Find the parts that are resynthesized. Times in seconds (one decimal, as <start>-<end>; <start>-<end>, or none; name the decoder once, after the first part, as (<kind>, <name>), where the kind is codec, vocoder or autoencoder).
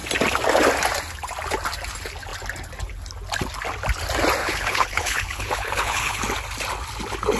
4.4-6.2 (codec, HILCodec)